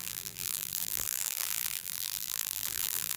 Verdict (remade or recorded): remade